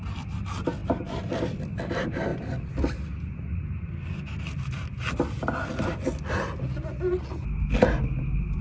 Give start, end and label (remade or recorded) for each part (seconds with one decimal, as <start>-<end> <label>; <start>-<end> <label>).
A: 0.0-8.6 recorded